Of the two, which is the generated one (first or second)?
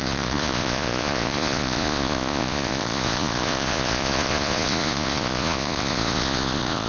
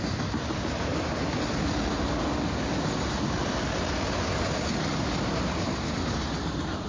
first